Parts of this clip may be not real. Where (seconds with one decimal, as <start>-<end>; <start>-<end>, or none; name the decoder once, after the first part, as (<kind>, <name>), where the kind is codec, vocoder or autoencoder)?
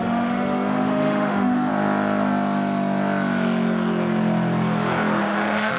0.0-1.7 (autoencoder, DAC-VAE); 5.2-5.8